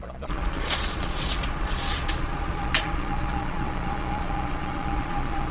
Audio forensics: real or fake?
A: fake